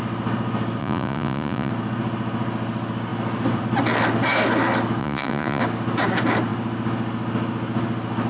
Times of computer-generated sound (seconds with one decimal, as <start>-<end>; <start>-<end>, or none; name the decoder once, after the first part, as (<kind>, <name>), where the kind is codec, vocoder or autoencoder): 0.8-1.7 (vocoder, Vocos); 5.0-5.6